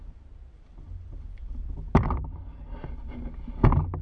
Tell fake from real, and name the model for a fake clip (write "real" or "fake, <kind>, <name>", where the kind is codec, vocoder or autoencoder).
real